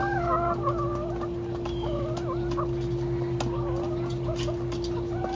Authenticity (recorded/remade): recorded